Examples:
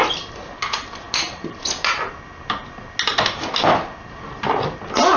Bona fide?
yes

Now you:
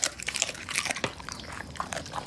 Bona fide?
no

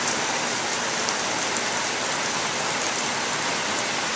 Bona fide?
no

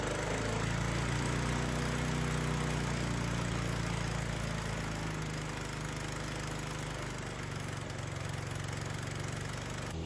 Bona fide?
yes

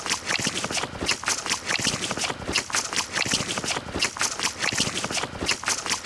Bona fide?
yes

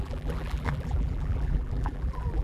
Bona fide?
no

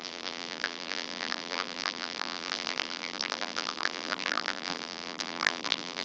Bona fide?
no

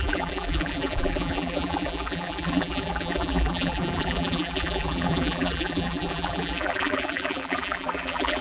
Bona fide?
no